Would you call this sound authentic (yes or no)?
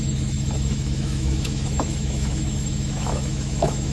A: no